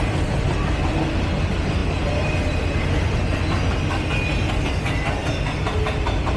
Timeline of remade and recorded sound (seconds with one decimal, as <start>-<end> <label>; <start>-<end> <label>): 0.0-6.4 recorded